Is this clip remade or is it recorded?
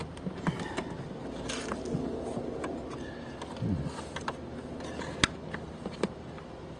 recorded